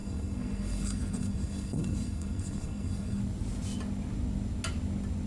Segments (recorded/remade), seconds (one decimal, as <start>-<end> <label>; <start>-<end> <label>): 0.0-3.2 remade; 3.2-5.3 recorded

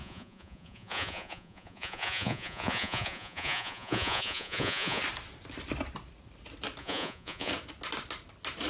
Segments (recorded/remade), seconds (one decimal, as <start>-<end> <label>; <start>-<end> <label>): 0.0-5.0 remade; 5.0-6.8 recorded; 6.8-7.5 remade; 7.5-8.7 recorded

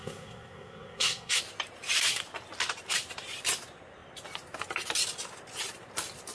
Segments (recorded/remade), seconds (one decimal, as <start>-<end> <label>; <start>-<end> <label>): 0.0-1.4 remade; 1.4-6.3 recorded